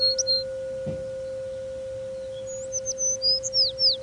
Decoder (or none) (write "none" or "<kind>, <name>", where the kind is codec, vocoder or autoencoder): none